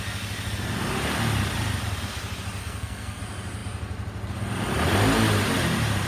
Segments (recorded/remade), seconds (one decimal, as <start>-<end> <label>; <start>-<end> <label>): 0.0-2.6 recorded; 2.6-3.2 remade; 3.2-6.1 recorded